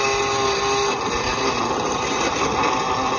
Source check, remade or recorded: recorded